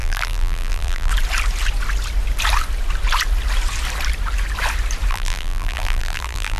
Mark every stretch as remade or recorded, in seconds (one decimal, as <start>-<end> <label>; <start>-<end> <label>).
0.0-1.1 remade; 1.1-5.1 recorded; 5.1-6.6 remade